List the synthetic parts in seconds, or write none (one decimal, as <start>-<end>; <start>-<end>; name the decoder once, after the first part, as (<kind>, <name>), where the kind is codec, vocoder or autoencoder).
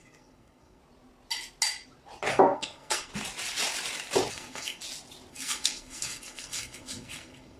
0.0-0.8 (codec, SNAC); 2.3-3.1; 4.3-4.8; 5.3-7.6